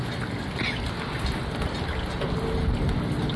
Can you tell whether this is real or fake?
real